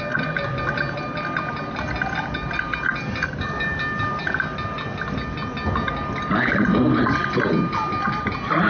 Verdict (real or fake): real